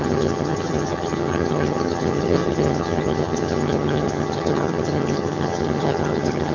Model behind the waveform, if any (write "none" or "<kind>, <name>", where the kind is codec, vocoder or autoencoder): vocoder, HiFi-GAN